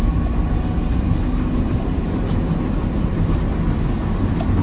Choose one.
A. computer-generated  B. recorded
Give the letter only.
B